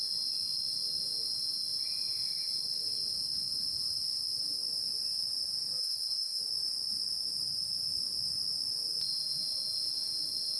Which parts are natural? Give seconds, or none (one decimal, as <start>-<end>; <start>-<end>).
0.0-5.8; 6.4-10.6